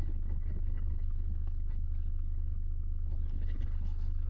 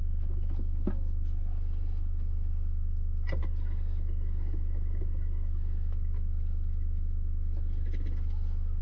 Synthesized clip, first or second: first